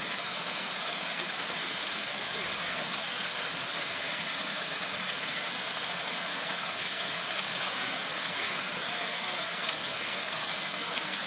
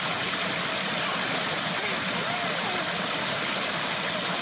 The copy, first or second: first